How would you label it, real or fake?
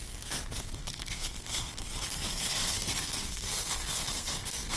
fake